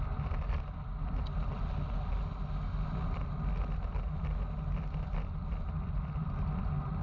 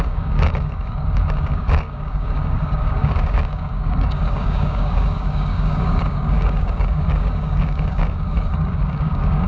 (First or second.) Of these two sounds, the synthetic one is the second